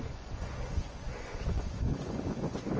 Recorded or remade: remade